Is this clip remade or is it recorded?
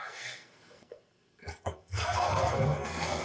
remade